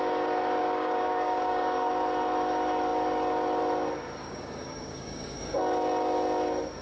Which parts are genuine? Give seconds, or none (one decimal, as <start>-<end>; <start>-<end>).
0.0-0.6; 1.9-4.2; 5.6-6.8